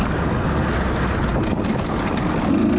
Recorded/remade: recorded